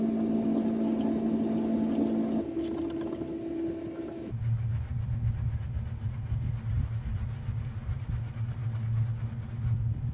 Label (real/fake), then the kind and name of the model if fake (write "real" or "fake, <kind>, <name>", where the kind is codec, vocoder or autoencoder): real